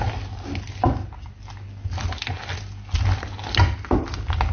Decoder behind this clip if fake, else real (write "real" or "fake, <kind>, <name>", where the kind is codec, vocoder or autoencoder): real